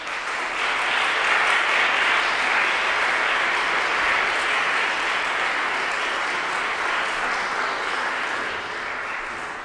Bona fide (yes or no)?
yes